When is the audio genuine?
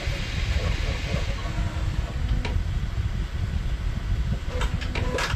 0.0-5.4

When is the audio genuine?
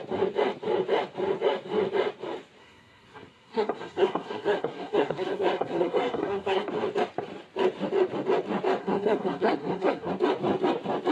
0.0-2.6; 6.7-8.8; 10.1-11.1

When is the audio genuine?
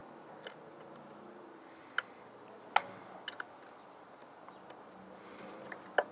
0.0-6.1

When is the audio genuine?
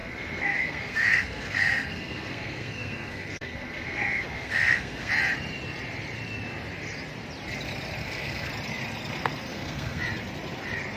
5.1-8.0; 8.5-9.5; 10.0-11.0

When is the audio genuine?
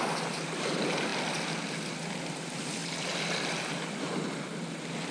0.0-5.1